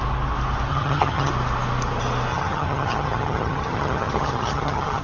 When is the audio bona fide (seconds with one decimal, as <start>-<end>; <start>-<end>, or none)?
0.0-0.7; 1.3-2.3